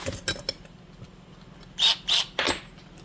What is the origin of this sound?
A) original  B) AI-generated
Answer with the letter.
A